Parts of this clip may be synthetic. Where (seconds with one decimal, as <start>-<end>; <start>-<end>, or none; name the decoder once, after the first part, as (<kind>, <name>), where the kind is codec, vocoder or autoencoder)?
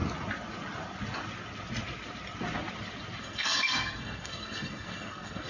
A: 3.2-5.5 (codec, SNAC)